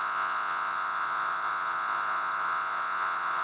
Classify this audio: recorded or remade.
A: remade